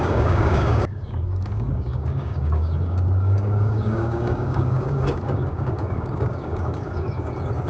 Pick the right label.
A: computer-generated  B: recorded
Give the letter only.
A